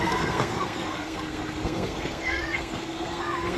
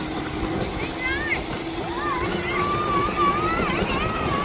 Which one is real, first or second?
second